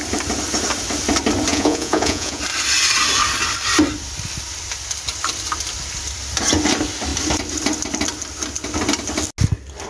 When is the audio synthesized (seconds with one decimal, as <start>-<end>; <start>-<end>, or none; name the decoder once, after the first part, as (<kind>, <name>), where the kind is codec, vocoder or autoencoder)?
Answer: 1.5-2.4 (vocoder, Vocos)